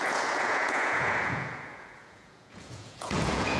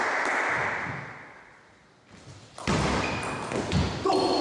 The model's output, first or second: first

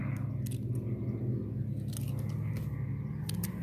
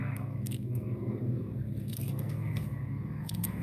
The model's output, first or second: second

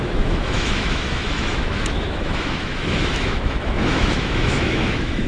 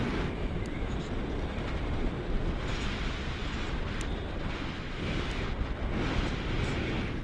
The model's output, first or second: first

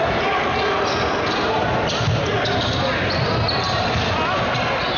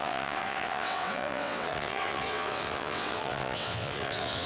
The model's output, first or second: second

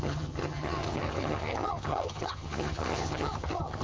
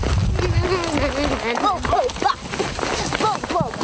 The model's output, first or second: first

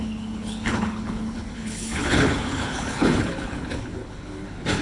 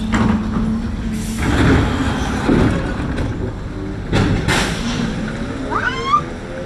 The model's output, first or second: first